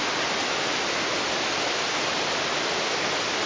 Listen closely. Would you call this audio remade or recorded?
recorded